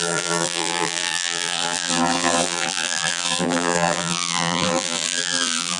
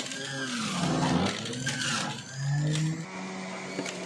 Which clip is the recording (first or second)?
second